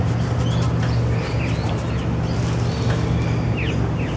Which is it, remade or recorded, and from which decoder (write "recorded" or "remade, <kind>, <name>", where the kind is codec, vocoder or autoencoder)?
recorded